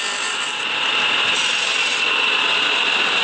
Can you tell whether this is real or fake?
real